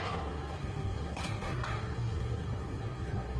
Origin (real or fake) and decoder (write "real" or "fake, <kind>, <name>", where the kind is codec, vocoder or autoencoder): fake, codec, SNAC